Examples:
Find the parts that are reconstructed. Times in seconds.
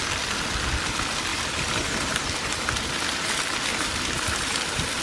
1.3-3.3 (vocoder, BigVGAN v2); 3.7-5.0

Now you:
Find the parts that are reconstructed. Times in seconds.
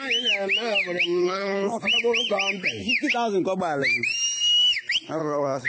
1.2-1.8 (codec, HILCodec); 5.2-5.7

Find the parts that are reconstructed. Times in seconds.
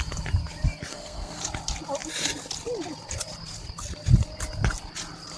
0.9-1.4 (codec, SNAC)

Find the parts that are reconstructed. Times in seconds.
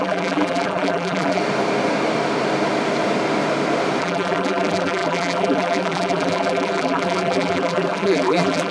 0.0-1.4 (vocoder, BigVGAN v2); 4.0-8.7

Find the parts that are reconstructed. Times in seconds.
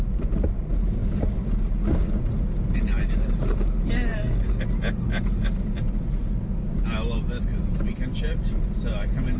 none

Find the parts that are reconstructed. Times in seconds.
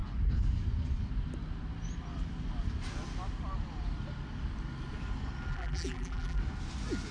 5.5-6.4 (vocoder, BigVGAN v2)